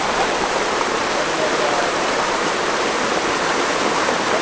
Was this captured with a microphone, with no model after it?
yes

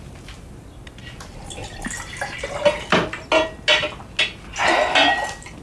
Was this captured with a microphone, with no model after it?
yes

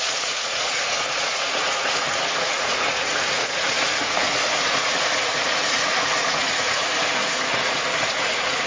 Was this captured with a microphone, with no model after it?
no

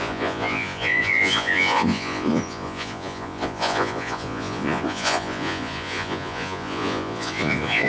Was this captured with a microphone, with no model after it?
no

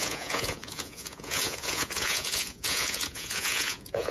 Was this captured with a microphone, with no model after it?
no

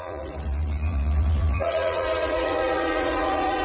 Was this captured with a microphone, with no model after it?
no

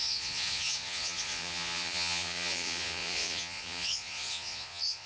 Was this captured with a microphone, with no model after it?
no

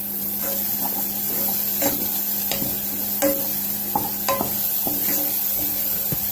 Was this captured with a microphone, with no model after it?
yes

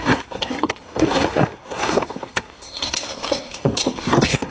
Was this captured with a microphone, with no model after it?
no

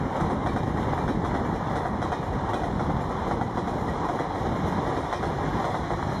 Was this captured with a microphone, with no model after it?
yes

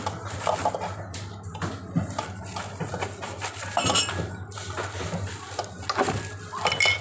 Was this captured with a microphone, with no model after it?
yes